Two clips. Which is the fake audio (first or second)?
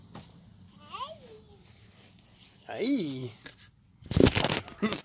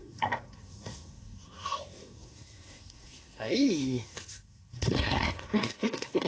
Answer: second